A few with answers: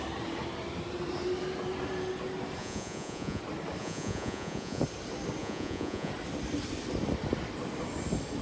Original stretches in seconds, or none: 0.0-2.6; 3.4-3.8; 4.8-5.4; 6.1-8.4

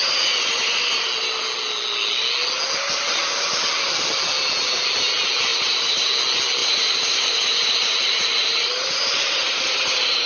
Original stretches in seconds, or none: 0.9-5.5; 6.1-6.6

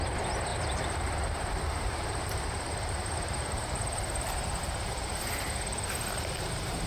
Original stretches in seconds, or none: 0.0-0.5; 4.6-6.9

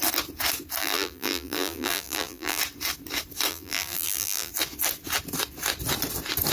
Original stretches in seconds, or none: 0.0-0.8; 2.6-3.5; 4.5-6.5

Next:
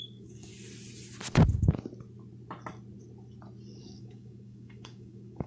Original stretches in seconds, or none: 0.5-3.8

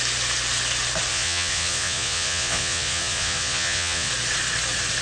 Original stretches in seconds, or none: 0.0-1.1; 4.1-5.0

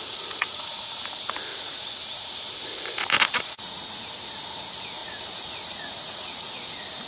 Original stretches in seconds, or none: 0.8-1.5; 4.0-5.0; 6.5-7.1